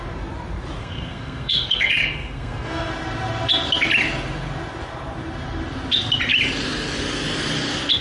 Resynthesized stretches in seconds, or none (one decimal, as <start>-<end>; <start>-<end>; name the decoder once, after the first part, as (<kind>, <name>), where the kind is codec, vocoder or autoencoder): 0.8-2.9 (codec, SNAC)

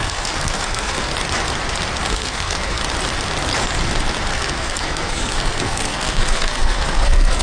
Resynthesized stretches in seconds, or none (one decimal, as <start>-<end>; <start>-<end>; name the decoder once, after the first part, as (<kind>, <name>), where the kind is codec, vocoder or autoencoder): 0.0-1.1 (codec, SNAC); 2.1-2.8; 4.3-7.4

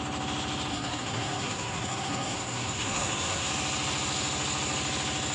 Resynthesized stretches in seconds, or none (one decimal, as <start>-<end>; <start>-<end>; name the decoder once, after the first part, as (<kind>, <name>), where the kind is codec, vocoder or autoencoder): 0.7-3.5 (codec, SNAC)

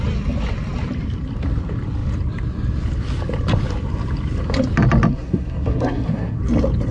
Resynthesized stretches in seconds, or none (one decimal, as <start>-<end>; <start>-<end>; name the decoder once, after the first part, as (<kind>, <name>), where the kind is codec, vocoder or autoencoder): 5.1-6.4 (codec, SNAC)

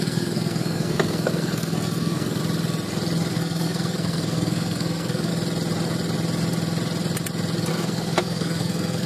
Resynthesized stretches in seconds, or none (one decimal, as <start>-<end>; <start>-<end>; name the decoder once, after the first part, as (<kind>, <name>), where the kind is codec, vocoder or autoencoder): 0.0-2.4 (codec, SNAC); 3.3-5.3; 7.7-9.1

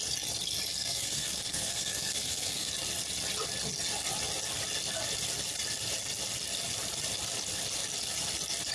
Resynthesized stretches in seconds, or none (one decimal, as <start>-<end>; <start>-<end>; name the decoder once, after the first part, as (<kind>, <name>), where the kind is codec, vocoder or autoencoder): 0.8-2.7 (codec, SNAC)

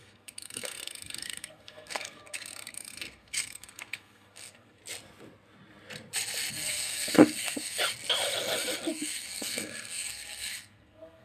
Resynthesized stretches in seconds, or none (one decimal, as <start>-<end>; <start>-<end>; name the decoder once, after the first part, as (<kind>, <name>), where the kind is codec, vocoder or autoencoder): 0.0-4.8 (codec, SNAC); 6.5-7.8; 8.9-11.2

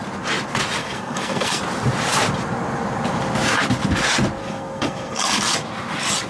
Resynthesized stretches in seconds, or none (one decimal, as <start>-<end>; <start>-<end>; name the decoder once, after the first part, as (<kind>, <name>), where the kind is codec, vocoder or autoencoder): 0.8-1.6 (codec, SNAC); 4.4-5.4